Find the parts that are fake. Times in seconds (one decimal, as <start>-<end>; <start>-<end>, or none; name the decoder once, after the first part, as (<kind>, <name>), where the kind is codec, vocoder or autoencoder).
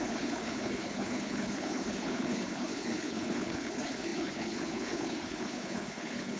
0.0-6.4 (codec, HILCodec)